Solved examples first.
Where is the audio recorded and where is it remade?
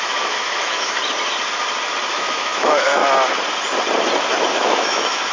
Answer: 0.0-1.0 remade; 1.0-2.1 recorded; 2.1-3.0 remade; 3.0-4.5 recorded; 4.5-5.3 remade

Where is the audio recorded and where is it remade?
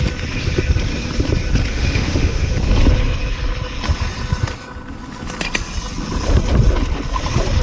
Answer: 0.0-1.7 recorded; 1.7-2.5 remade; 2.5-7.6 recorded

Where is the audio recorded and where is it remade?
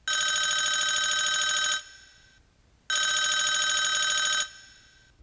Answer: 0.0-5.2 recorded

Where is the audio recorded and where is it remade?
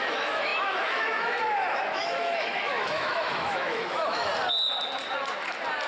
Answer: 0.0-4.3 remade; 4.3-5.9 recorded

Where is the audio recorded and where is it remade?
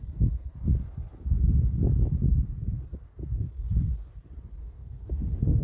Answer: 0.0-4.6 recorded; 4.6-5.6 remade